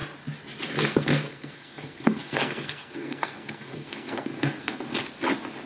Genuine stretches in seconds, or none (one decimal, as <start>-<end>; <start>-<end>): 0.0-0.7; 4.9-5.7